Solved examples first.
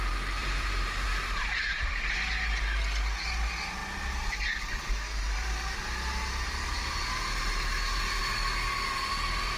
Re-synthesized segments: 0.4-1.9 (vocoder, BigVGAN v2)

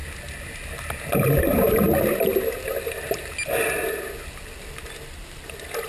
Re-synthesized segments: none

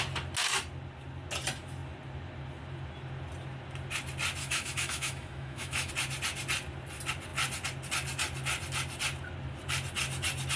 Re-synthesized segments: 4.4-5.9 (autoencoder, DAC-VAE)

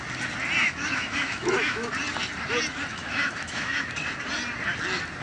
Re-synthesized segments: 0.6-1.9 (autoencoder, DAC-VAE); 2.9-3.9

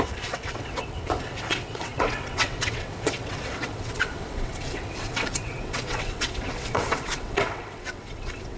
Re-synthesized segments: 0.0-8.6 (vocoder, WaveNeXt)

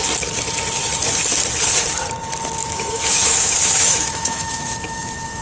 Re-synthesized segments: 2.6-5.4 (autoencoder, DAC-VAE)

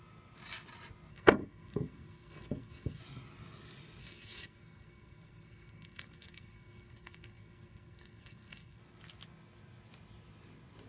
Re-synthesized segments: 1.1-3.0 (codec, SNAC); 4.0-8.8